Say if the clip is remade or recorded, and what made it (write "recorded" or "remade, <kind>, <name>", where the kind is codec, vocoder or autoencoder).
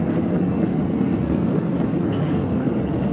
remade, codec, SNAC